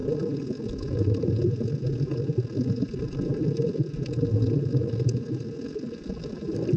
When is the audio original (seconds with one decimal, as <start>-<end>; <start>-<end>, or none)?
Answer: 0.0-6.8